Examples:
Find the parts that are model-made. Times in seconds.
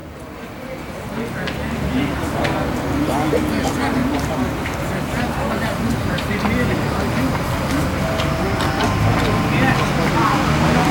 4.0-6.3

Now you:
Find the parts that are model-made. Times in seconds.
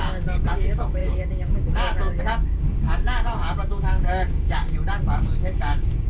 0.0-6.1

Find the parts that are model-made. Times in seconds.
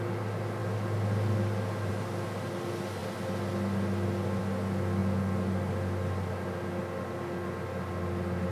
none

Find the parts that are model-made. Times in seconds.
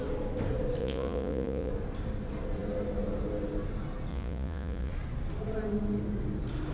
0.8-1.7; 4.1-4.9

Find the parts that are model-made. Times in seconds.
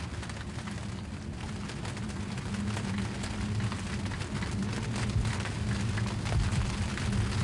none